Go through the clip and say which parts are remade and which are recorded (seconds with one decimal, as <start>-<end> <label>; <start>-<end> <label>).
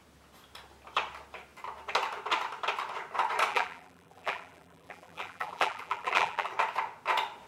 0.0-3.5 recorded; 3.5-6.5 remade; 6.5-7.5 recorded